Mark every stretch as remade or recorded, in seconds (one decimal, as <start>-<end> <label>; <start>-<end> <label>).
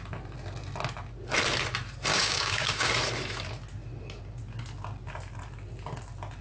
0.0-2.1 recorded; 2.1-2.9 remade; 2.9-6.4 recorded